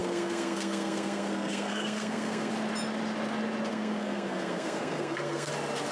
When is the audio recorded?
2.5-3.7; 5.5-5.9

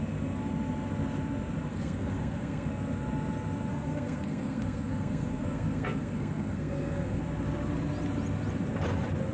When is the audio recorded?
0.0-1.7; 2.7-3.7; 7.2-9.3

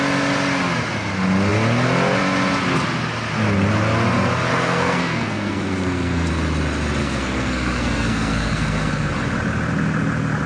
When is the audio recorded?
0.0-4.5; 6.3-7.0; 9.1-10.5

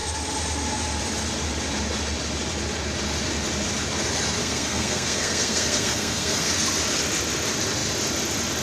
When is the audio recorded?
0.0-4.4; 6.5-8.6